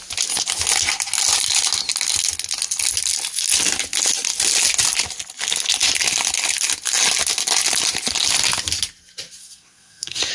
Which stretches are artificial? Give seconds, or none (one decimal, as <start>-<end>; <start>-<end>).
9.4-10.3